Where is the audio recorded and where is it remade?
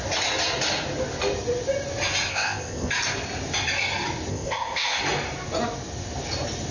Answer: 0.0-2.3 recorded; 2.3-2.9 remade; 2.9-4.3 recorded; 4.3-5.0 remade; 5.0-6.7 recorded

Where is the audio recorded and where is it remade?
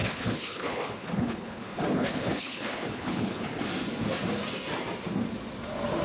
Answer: 0.0-3.6 remade; 3.6-6.0 recorded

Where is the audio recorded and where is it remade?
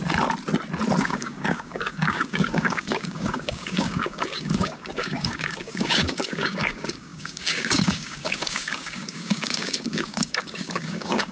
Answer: 0.0-1.0 recorded; 1.0-11.3 remade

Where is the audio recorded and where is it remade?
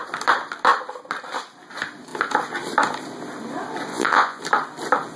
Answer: 0.0-3.9 recorded; 3.9-4.4 remade; 4.4-5.2 recorded